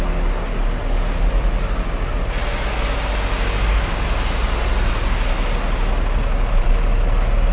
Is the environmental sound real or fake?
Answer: real